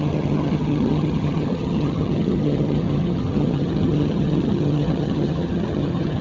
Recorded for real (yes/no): no